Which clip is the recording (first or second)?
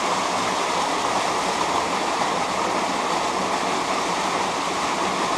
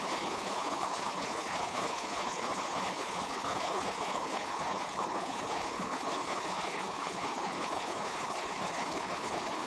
first